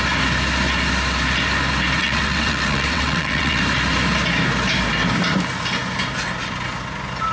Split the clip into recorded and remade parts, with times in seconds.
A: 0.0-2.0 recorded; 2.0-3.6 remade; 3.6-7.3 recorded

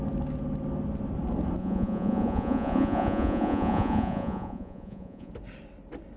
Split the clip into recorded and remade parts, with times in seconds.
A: 0.0-1.6 recorded; 1.6-5.3 remade; 5.3-6.2 recorded